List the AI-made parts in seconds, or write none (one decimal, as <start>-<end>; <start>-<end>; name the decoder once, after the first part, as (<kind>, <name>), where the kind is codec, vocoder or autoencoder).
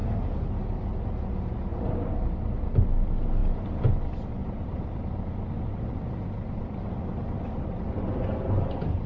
1.7-2.4 (vocoder, BigVGAN v2); 4.4-8.0